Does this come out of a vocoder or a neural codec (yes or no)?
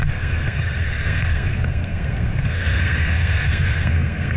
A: yes